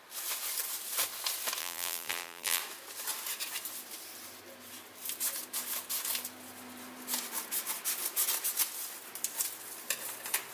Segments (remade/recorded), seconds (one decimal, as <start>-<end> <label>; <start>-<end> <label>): 0.0-1.6 recorded; 1.6-2.6 remade; 2.6-10.5 recorded